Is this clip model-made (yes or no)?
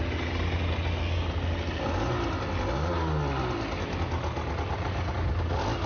no